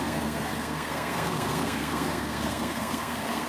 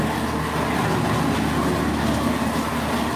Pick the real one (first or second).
second